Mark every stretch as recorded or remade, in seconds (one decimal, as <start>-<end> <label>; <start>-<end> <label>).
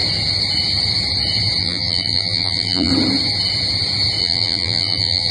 0.0-1.6 recorded; 1.6-2.9 remade; 2.9-4.2 recorded; 4.2-5.3 remade